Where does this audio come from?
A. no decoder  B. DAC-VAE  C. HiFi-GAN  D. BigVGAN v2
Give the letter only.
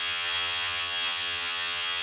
C